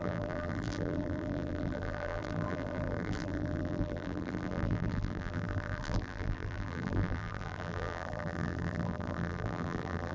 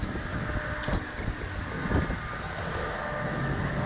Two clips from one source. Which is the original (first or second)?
second